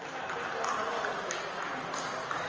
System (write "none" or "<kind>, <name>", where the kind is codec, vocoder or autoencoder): none